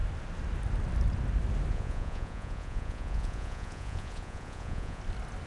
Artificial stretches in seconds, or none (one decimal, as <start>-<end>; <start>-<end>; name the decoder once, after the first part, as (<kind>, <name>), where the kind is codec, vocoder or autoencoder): 1.7-5.0 (vocoder, Vocos)